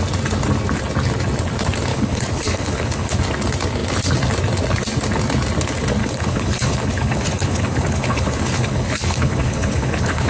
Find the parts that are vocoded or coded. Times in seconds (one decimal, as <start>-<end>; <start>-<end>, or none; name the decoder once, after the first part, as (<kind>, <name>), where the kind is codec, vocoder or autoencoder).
1.9-3.2 (codec, HILCodec); 6.0-10.3